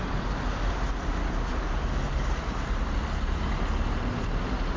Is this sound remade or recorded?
recorded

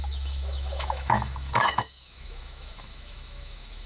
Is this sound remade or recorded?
remade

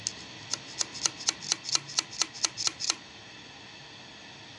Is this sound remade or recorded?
recorded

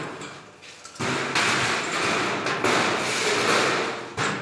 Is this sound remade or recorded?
recorded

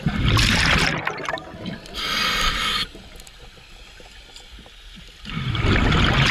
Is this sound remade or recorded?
recorded